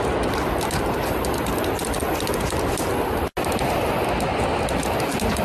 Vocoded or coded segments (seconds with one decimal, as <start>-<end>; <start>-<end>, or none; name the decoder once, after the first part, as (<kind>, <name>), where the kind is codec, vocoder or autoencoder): none